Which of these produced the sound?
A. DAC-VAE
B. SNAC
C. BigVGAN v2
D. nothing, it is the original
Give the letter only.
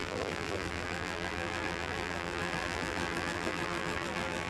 C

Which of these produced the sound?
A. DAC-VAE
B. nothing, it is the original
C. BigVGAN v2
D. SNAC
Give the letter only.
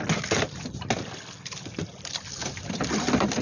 B